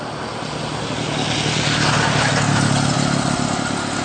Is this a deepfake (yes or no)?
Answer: no